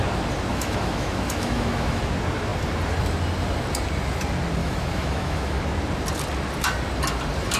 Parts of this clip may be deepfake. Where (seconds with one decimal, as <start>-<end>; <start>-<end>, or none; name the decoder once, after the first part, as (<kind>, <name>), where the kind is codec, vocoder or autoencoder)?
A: 0.5-2.0 (autoencoder, DAC-VAE); 4.6-5.6